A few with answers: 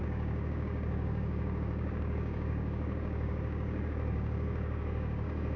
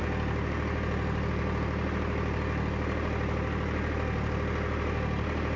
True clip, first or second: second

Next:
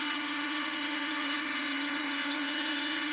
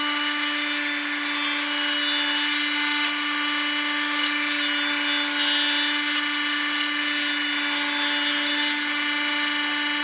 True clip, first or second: second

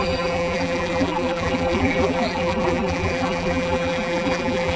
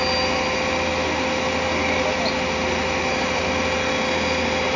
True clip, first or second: second